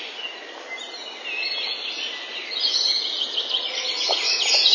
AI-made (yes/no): no